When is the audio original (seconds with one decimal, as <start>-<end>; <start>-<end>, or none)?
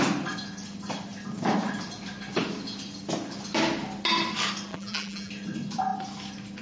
0.0-4.7; 5.3-6.6